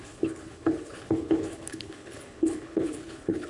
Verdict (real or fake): fake